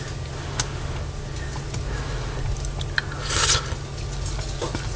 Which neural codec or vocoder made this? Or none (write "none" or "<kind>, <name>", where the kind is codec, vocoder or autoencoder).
none